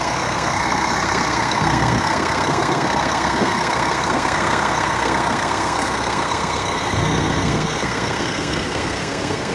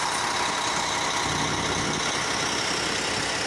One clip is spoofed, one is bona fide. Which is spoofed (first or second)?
first